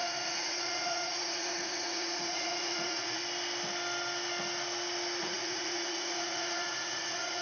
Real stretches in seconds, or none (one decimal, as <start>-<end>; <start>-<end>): 3.2-5.2